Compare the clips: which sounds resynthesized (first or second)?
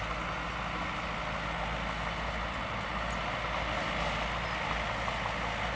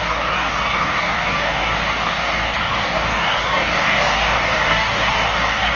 second